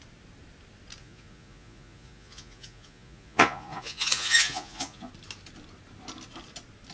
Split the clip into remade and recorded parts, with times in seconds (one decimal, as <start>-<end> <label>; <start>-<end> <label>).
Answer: 0.0-1.0 recorded; 1.0-5.1 remade; 5.1-6.9 recorded